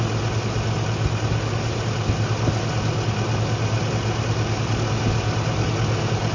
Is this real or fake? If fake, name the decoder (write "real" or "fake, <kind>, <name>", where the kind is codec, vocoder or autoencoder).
real